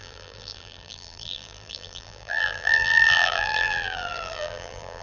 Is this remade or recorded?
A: remade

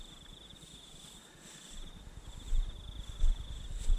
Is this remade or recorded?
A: recorded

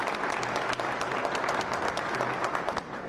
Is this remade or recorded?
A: recorded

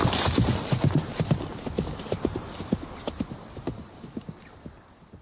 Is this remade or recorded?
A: recorded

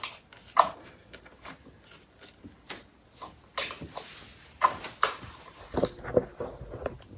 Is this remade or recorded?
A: recorded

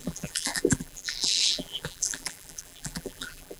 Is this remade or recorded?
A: remade